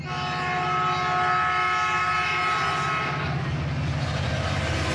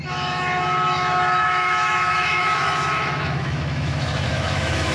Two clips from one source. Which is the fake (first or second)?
second